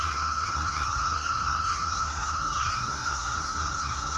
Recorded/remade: remade